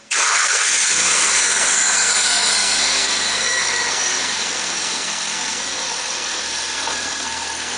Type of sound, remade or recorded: remade